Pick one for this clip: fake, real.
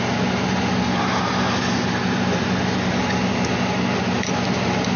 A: real